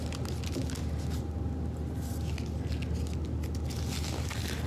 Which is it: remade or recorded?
recorded